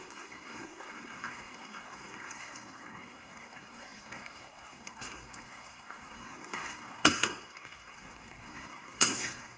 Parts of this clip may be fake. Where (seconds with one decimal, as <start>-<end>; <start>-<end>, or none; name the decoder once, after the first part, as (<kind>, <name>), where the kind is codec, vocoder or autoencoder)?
0.0-9.6 (codec, SNAC)